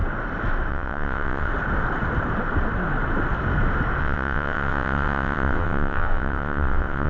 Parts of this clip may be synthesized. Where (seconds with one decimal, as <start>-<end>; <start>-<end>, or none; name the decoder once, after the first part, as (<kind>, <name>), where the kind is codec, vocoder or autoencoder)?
0.7-1.5 (vocoder, WaveNeXt); 4.0-7.1